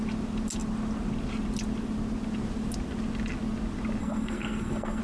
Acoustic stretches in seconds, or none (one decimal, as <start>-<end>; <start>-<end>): 0.0-4.0